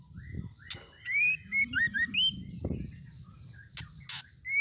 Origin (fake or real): real